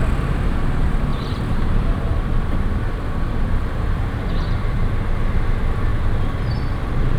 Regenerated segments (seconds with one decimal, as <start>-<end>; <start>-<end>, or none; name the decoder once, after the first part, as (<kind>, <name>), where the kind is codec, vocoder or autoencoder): 1.1-2.1 (vocoder, BigVGAN v2)